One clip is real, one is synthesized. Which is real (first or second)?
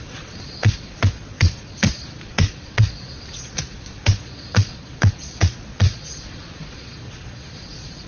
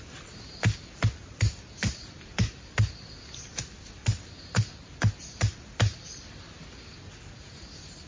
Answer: second